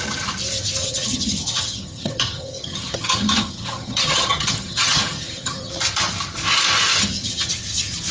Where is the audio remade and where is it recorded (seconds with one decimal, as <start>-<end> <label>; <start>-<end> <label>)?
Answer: 0.0-0.8 recorded; 0.8-5.7 remade; 5.7-6.9 recorded; 6.9-7.5 remade; 7.5-8.1 recorded